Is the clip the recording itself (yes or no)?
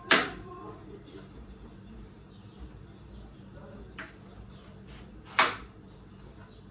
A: yes